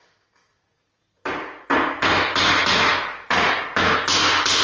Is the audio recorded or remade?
recorded